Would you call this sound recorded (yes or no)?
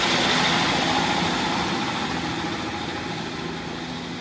yes